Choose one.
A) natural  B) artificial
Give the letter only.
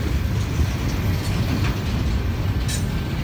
A